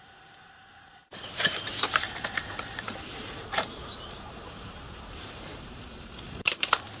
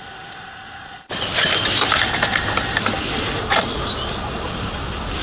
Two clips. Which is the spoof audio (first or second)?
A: first